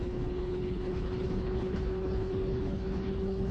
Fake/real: fake